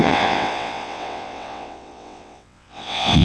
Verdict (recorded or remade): remade